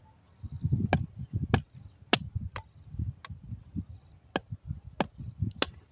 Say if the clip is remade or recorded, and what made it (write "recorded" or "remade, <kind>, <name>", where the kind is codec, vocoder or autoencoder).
recorded